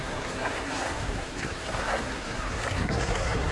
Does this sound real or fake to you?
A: fake